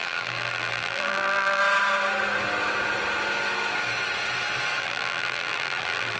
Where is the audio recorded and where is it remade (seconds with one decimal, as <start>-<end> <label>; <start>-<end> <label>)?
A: 0.0-1.6 remade; 1.6-4.8 recorded; 4.8-6.2 remade